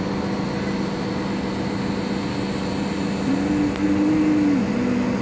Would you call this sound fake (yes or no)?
no